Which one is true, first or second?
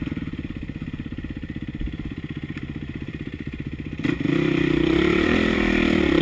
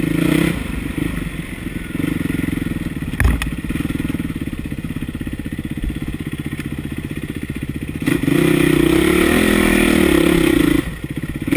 second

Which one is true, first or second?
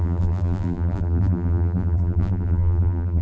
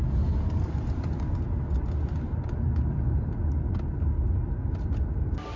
second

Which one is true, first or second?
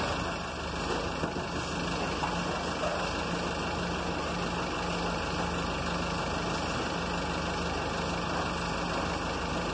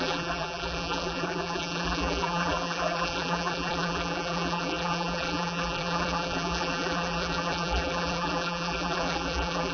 first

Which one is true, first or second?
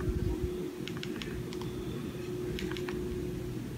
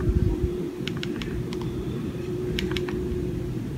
first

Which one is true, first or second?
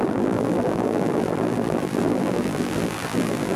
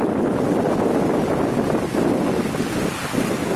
second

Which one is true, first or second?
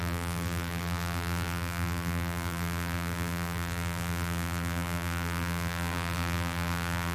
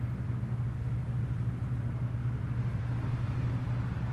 second